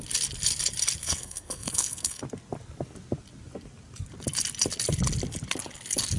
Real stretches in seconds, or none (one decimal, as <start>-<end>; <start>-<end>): 0.0-1.0; 2.2-6.2